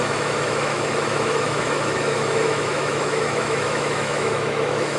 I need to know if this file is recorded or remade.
remade